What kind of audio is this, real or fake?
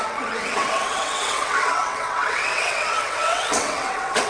fake